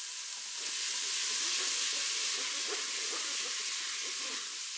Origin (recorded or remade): recorded